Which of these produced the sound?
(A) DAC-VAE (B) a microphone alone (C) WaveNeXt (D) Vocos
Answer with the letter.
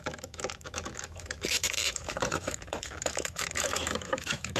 A